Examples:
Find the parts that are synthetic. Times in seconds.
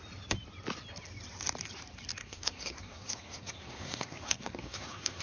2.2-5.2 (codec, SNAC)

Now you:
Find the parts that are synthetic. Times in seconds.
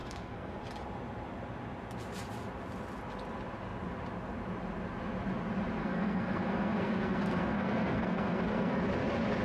0.0-0.6 (codec, SNAC); 5.8-8.8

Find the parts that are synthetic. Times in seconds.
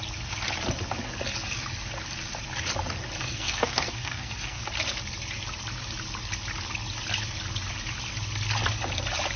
3.2-4.6 (codec, SNAC)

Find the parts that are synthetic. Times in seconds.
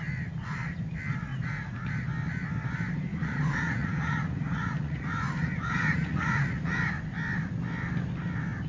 1.3-1.9 (vocoder, Vocos); 3.1-6.6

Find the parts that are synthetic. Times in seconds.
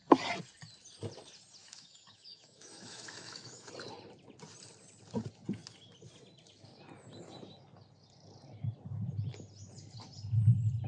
1.6-3.7 (autoencoder, DAC-VAE)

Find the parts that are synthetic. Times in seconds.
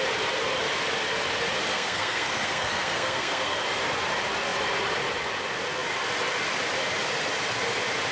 1.7-3.6 (codec, SNAC)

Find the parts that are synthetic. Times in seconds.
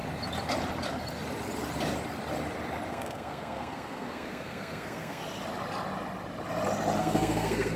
2.9-5.2 (codec, SNAC); 7.0-7.8